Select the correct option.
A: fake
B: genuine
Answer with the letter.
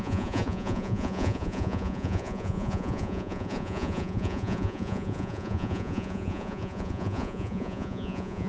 A